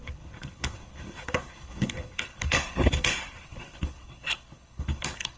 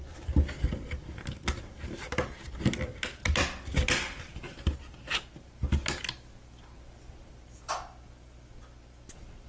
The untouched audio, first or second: second